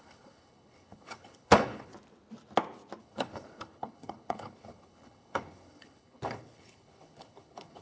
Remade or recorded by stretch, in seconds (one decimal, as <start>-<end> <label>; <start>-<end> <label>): 0.0-1.9 remade; 1.9-3.0 recorded; 3.0-7.8 remade